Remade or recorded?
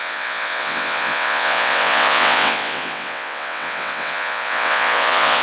remade